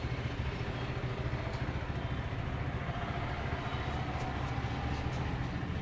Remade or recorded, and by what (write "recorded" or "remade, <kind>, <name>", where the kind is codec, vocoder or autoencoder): recorded